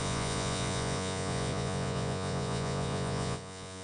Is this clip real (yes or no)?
no